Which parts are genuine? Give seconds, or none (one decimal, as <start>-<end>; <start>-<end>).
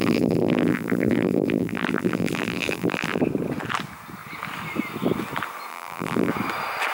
3.2-5.7; 6.3-6.9